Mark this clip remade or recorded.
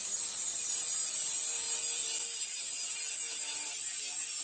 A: recorded